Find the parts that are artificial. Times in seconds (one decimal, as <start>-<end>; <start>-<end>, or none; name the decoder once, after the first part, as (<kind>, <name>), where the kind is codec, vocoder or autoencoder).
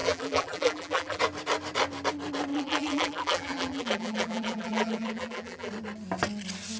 0.0-1.2 (vocoder, BigVGAN v2); 2.5-5.7